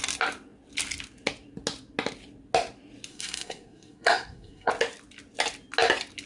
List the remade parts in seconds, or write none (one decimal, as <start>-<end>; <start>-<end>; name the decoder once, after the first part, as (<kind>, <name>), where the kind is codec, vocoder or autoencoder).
3.1-4.7 (codec, SNAC)